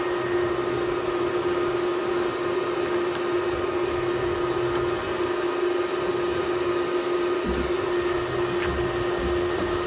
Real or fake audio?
real